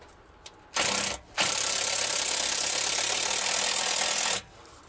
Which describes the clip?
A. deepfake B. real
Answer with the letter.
B